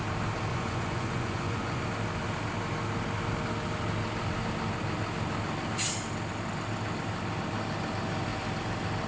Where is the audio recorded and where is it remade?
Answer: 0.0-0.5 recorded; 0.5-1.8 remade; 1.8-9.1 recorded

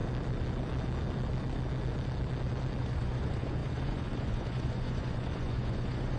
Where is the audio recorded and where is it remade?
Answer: 0.0-2.8 recorded; 2.8-6.2 remade

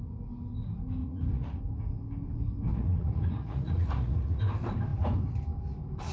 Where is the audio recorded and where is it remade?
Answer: 0.0-1.0 recorded; 1.0-1.6 remade; 1.6-2.7 recorded; 2.7-4.4 remade; 4.4-6.1 recorded

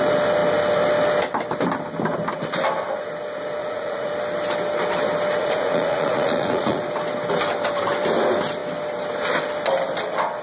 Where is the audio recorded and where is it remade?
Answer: 0.0-3.6 recorded; 3.6-4.1 remade; 4.1-5.4 recorded; 5.4-6.8 remade; 6.8-10.4 recorded

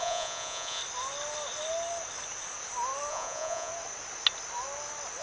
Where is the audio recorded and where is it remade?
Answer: 0.0-0.8 remade; 0.8-3.1 recorded; 3.1-3.7 remade; 3.7-5.2 recorded

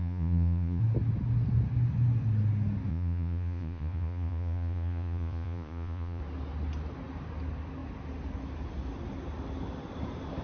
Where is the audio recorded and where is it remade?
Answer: 0.0-0.8 remade; 0.8-2.9 recorded; 2.9-6.2 remade; 6.2-10.4 recorded

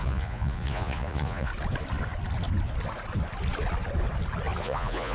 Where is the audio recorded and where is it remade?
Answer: 0.0-1.5 remade; 1.5-4.6 recorded; 4.6-5.1 remade